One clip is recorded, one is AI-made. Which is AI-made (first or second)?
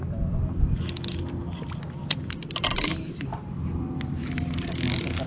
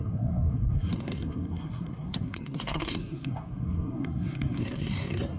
second